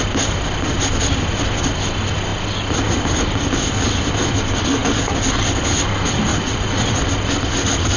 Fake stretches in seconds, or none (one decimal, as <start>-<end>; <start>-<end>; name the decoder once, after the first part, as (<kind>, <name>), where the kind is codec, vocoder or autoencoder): 6.3-7.0 (vocoder, Vocos)